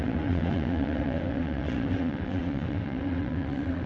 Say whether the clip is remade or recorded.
remade